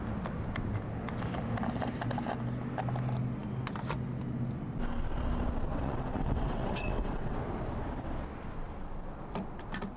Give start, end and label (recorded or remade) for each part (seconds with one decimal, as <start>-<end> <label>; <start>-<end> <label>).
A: 0.0-5.7 recorded; 5.7-7.4 remade; 7.4-10.0 recorded